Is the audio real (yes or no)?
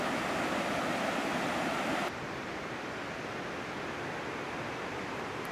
yes